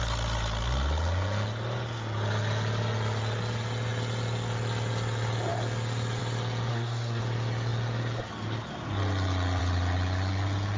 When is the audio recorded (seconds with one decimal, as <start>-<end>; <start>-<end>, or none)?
0.0-6.7; 7.2-10.8